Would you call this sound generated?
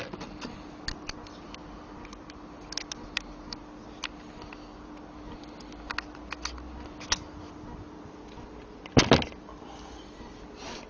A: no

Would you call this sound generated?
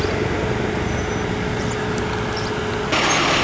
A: no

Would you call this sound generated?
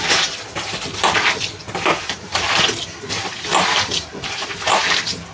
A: no